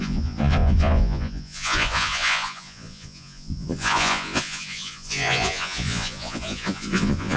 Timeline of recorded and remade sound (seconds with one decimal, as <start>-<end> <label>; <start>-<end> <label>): 0.0-7.4 remade